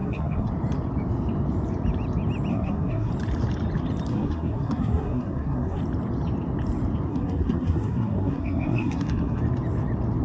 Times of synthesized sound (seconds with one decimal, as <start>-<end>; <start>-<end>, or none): 0.0-0.5; 2.5-3.1; 4.1-5.8; 7.1-9.4